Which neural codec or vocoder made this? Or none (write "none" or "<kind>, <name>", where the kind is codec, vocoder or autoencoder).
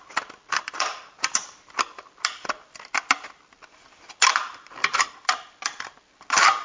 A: none